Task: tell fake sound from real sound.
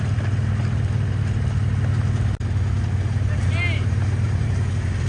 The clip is real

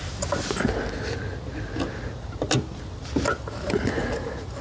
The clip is real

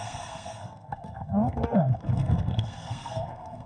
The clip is fake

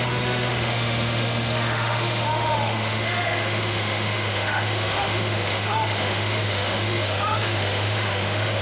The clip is fake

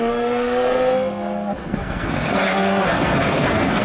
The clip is fake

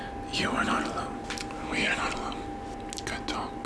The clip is real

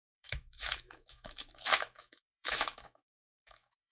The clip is fake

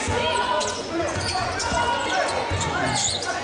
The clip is fake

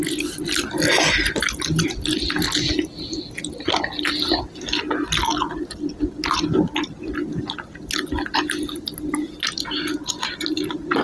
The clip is real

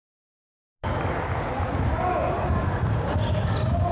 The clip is real